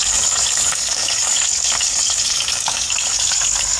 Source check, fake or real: fake